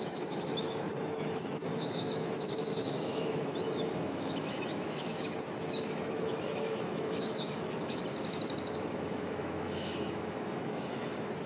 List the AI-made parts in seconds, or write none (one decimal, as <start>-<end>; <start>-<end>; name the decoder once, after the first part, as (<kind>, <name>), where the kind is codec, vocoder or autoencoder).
0.0-8.0 (autoencoder, DAC-VAE); 8.7-11.5